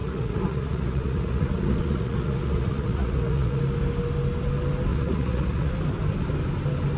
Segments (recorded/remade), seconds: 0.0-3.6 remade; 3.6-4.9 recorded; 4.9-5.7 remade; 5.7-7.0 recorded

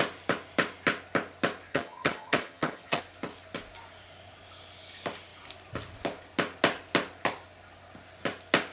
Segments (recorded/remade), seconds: 0.0-1.7 recorded; 1.7-3.0 remade; 3.0-8.7 recorded